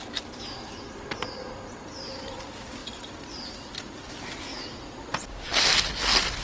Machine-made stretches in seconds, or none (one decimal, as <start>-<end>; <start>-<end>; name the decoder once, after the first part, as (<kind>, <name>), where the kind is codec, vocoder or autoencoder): 0.0-0.9 (vocoder, BigVGAN v2); 2.8-3.8; 4.5-5.6